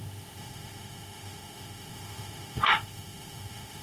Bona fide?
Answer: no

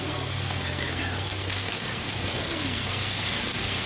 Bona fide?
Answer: no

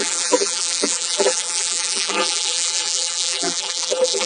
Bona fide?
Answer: no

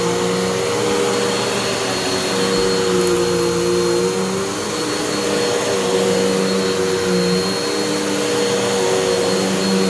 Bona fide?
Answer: yes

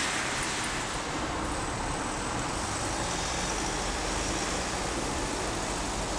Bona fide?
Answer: yes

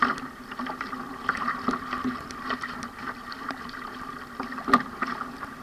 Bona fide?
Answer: no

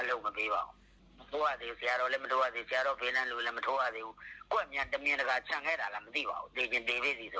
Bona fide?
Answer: yes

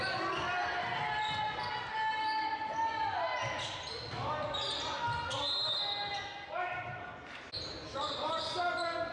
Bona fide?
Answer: yes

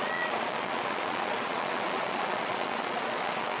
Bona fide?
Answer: no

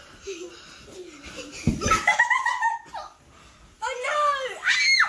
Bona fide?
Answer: yes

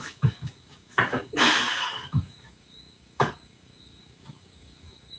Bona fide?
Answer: no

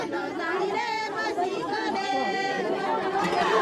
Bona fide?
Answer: yes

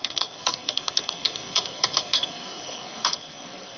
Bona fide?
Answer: no